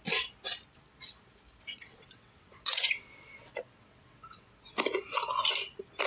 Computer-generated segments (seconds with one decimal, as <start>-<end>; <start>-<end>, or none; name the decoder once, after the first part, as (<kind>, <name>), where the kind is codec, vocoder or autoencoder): 1.7-4.5 (vocoder, WaveNeXt)